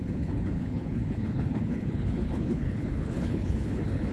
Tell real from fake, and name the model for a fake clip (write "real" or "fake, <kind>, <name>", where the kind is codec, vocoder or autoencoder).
fake, codec, HILCodec